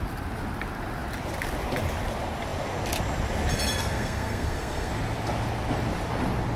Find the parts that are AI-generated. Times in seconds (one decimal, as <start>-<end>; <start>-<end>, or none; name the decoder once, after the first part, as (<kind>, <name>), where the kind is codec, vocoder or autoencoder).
3.8-4.9 (codec, SNAC)